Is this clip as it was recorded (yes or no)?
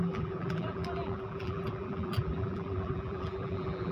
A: no